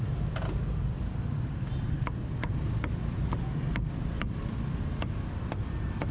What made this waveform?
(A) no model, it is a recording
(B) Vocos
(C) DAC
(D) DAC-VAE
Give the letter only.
A